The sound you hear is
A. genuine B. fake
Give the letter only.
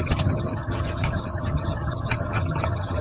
B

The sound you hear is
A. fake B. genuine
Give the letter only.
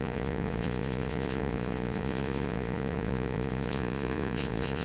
A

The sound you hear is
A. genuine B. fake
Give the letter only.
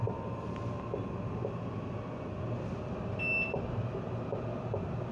A